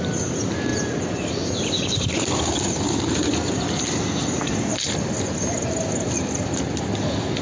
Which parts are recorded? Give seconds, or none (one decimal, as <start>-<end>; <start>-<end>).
0.0-0.7; 4.4-7.4